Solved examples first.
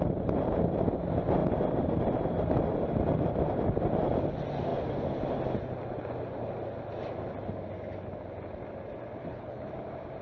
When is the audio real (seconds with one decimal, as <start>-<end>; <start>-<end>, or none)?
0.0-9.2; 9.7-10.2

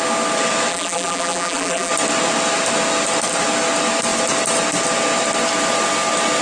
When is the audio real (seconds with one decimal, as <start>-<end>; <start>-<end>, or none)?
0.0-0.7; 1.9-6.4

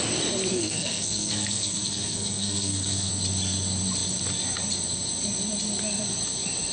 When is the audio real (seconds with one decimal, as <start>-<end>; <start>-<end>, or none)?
0.0-0.5; 3.1-6.7